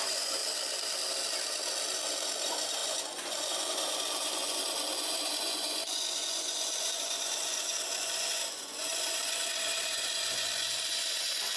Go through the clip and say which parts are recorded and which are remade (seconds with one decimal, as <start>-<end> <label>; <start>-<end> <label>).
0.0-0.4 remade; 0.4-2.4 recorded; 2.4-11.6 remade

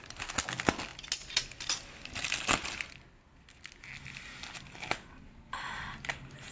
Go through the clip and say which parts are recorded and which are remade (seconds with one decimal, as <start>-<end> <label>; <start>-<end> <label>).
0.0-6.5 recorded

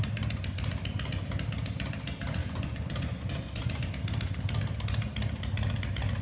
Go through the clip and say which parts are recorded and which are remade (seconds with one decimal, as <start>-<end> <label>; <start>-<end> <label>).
0.0-2.4 recorded; 2.4-3.9 remade; 3.9-6.2 recorded

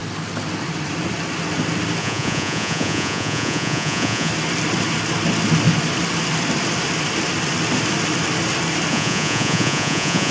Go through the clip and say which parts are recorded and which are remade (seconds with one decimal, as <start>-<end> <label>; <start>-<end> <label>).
0.0-2.0 recorded; 2.0-4.3 remade; 4.3-8.9 recorded; 8.9-10.3 remade